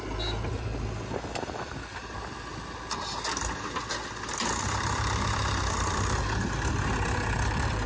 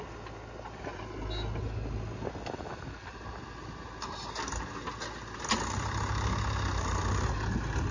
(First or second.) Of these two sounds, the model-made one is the first